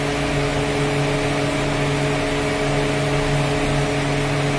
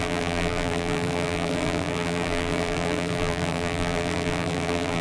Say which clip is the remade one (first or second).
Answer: second